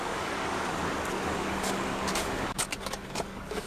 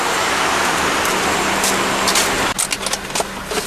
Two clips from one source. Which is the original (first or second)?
second